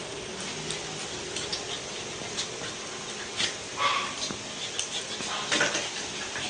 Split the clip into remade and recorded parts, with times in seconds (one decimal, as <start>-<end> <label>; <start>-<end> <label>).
0.0-6.5 recorded